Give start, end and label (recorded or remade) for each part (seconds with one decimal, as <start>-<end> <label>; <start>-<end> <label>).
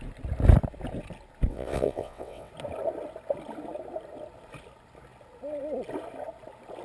0.0-1.5 recorded; 1.5-2.5 remade; 2.5-6.8 recorded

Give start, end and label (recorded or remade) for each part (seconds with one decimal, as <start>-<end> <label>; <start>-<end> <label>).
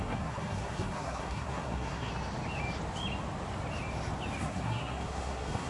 0.0-2.1 remade; 2.1-4.4 recorded; 4.4-5.7 remade